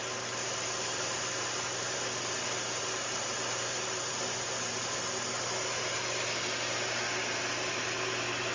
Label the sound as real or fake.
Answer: real